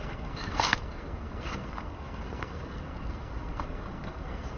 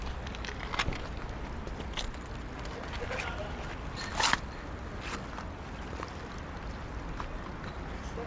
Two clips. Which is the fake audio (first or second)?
first